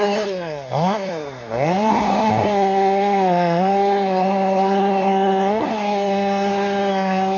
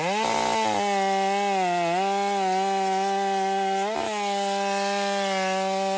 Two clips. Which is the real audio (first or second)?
second